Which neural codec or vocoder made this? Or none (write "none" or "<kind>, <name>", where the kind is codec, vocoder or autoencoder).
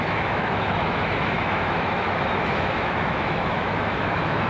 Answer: autoencoder, DAC-VAE